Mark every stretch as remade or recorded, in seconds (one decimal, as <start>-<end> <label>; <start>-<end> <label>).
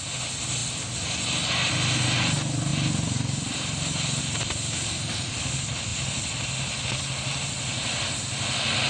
0.0-8.9 recorded